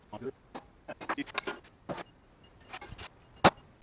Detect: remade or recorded recorded